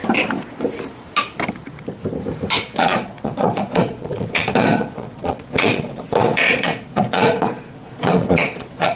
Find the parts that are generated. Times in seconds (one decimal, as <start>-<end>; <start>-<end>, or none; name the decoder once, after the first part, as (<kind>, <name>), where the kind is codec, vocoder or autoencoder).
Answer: 2.6-9.0 (vocoder, Vocos)